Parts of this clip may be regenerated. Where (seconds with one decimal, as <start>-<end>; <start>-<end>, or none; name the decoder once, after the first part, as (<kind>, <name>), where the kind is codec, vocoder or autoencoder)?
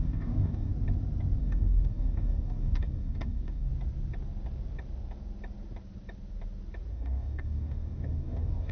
0.0-0.7 (codec, DAC); 1.4-3.7; 6.9-8.7